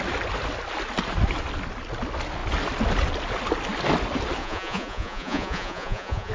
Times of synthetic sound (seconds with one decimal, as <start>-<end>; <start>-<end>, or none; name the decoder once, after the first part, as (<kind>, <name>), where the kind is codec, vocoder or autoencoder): 4.4-6.3 (vocoder, Vocos)